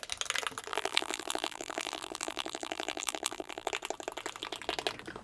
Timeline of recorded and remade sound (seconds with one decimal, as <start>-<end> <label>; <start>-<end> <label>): 0.0-0.7 recorded; 0.7-3.7 remade; 3.7-5.2 recorded